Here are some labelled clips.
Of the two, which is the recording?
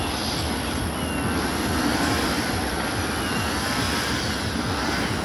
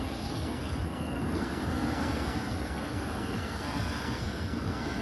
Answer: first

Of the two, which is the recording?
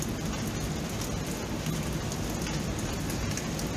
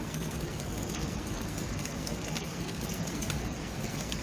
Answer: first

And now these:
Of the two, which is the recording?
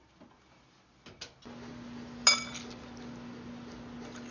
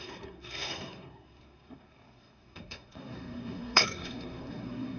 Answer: first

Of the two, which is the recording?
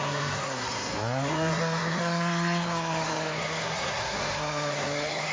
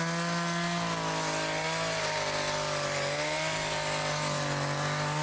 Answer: second